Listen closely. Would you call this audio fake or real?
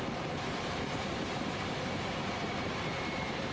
fake